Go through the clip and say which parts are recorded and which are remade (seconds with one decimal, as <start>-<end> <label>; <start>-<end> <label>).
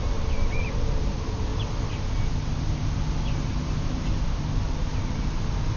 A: 0.0-1.5 remade; 1.5-4.2 recorded; 4.2-4.9 remade; 4.9-5.8 recorded